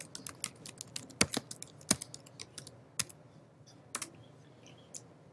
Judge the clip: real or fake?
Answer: real